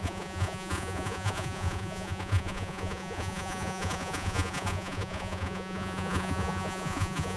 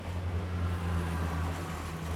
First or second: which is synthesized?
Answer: first